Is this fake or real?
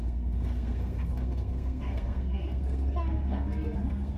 fake